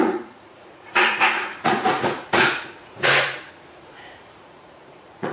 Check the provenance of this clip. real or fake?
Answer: fake